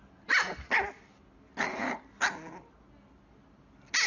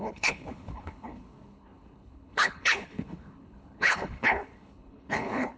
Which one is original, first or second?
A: first